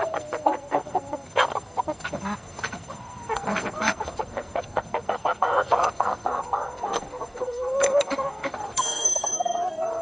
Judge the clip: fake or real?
fake